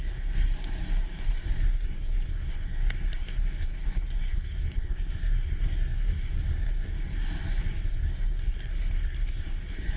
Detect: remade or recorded remade